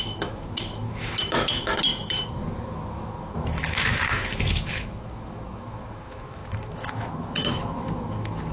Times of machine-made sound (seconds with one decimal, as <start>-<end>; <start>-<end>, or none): 0.0-8.5